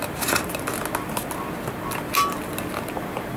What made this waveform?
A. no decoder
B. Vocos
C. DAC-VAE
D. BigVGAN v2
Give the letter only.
A